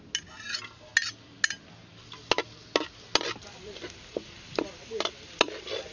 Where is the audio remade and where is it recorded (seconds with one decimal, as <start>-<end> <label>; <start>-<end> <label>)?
0.0-5.9 recorded